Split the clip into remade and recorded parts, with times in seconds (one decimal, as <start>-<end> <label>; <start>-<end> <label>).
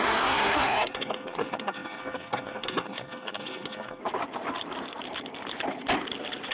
0.0-4.0 remade; 4.0-6.5 recorded